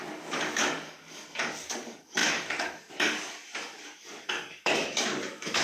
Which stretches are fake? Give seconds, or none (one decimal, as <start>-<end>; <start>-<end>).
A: 0.0-5.6